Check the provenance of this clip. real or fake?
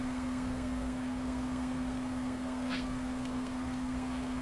fake